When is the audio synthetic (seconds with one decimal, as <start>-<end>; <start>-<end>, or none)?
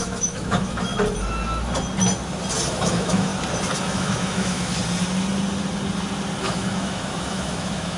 0.0-0.9; 2.7-3.3; 3.8-4.8; 6.4-8.0